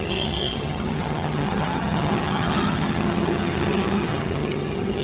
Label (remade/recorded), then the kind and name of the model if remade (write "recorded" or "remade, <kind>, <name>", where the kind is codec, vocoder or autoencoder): remade, vocoder, HiFi-GAN